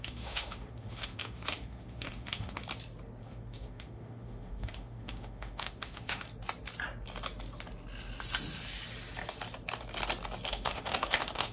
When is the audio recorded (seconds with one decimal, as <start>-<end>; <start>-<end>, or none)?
2.6-3.2; 6.3-10.5